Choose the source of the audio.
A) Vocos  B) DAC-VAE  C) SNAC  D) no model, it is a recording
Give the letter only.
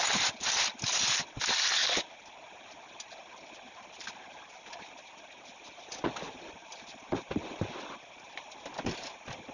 D